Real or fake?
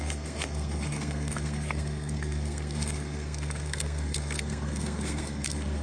fake